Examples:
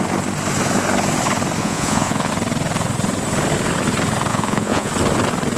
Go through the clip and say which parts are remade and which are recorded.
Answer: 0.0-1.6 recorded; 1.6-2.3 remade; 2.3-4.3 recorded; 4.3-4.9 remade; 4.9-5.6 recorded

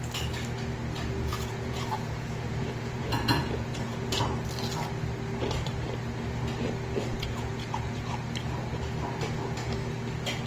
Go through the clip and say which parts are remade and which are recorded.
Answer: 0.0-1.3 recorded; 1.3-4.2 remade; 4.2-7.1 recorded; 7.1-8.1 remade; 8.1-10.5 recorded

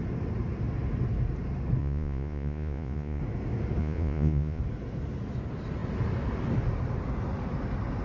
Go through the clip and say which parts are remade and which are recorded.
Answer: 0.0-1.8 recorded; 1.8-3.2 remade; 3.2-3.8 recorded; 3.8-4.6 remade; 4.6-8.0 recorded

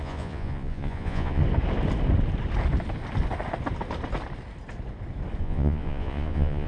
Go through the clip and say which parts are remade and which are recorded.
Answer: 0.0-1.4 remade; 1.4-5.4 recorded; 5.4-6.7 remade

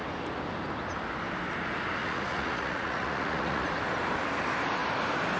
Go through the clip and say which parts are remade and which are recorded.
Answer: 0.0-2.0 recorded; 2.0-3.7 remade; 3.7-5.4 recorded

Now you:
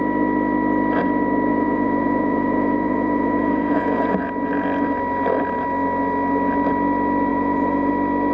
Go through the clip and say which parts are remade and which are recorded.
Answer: 0.0-1.5 recorded; 1.5-4.1 remade; 4.1-7.3 recorded; 7.3-7.9 remade; 7.9-8.3 recorded